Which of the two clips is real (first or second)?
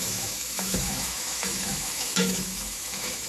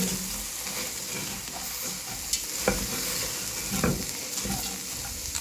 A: second